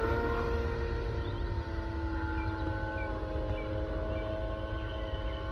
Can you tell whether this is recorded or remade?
recorded